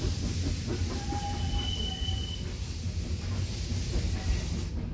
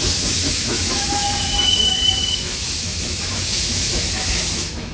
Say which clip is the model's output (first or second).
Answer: second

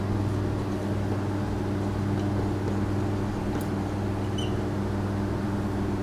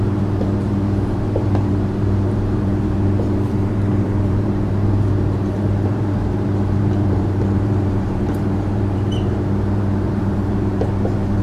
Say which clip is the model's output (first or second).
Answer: second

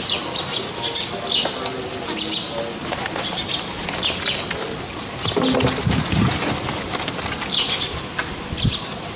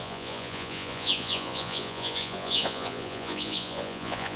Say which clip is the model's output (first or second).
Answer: second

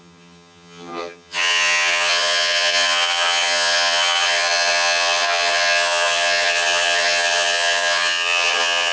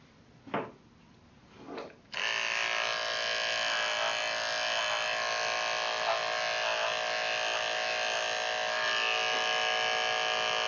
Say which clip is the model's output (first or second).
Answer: first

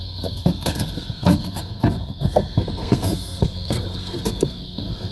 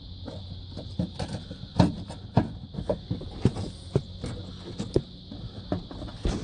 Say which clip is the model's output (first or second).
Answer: first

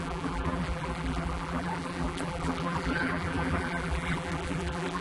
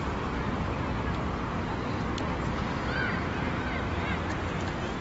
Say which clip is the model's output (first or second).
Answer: first